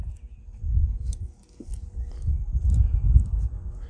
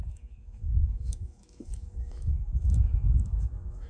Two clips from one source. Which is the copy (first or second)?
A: second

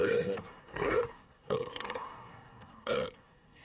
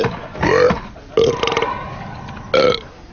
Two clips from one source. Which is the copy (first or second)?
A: first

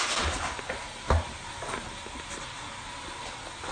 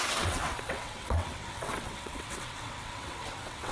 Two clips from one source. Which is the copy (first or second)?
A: second